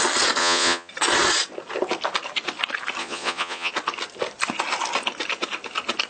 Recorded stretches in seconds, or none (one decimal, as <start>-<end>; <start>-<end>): 0.0-0.4; 0.9-3.0; 3.7-6.1